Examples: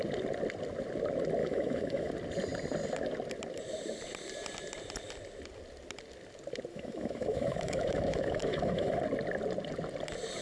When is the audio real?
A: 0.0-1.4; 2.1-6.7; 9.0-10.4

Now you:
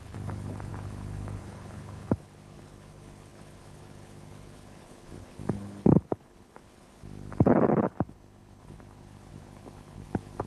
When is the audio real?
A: none

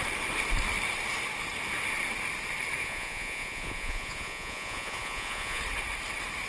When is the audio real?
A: 0.0-2.8; 5.6-6.5